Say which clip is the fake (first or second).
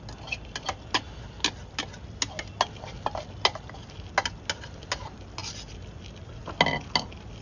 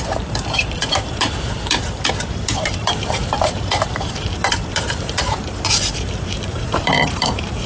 second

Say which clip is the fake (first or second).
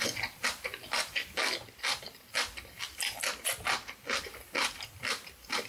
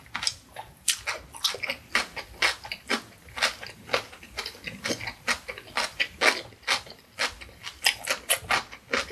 first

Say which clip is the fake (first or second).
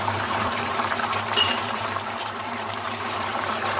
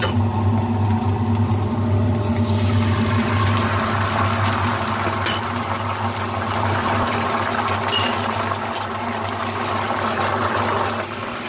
first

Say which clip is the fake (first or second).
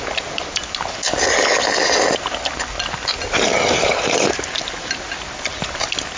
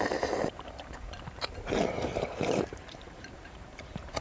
second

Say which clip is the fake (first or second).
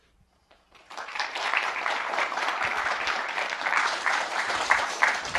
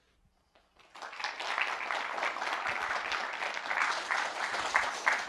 first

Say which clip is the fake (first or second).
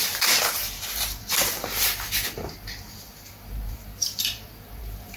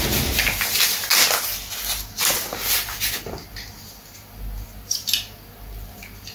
first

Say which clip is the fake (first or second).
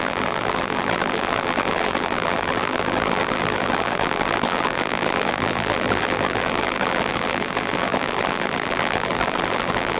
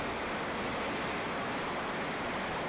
first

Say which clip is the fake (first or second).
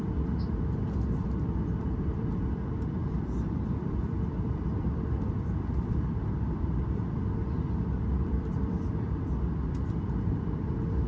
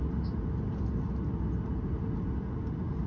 first